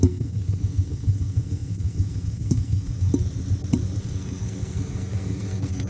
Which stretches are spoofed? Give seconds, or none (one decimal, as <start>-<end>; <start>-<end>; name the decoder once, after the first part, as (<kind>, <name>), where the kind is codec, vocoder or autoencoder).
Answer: 0.0-3.1 (codec, SNAC); 4.0-5.9